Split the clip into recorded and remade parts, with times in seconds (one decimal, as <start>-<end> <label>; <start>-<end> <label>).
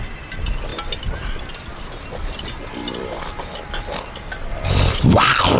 0.0-5.6 recorded